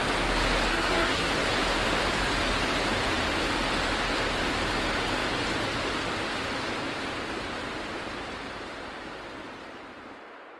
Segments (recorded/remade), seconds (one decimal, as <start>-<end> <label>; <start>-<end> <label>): 0.0-0.7 recorded; 0.7-1.3 remade; 1.3-10.6 recorded